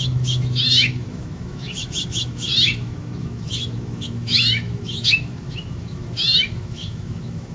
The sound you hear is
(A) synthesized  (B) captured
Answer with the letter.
A